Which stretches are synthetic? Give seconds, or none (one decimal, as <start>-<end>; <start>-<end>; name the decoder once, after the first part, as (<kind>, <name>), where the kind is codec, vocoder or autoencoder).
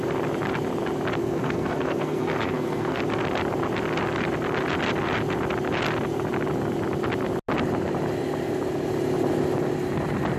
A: 1.2-3.0 (codec, SNAC)